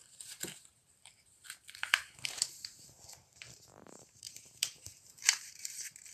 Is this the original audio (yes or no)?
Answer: no